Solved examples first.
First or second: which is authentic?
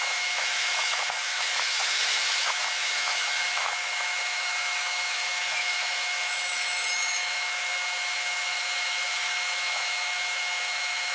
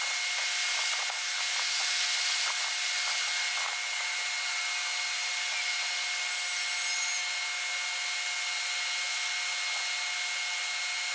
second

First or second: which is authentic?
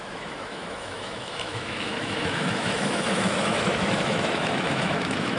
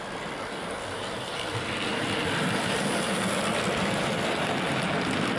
second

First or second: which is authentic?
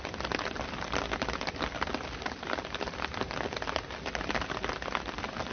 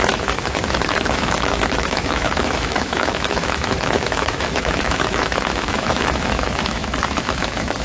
first